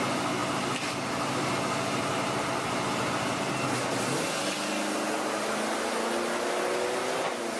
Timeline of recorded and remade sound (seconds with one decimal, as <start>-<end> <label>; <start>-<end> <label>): 0.0-7.6 recorded